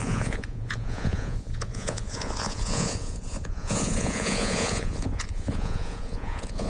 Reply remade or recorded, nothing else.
remade